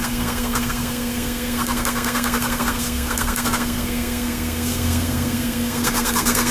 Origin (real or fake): fake